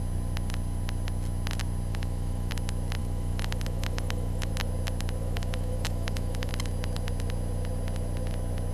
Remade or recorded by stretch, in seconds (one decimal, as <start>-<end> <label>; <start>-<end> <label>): 0.0-1.9 recorded; 1.9-2.5 remade; 2.5-3.0 recorded; 3.0-4.5 remade; 4.5-5.2 recorded; 5.2-6.5 remade; 6.5-8.7 recorded